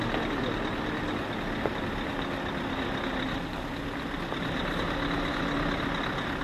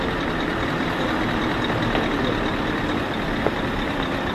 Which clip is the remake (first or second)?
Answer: second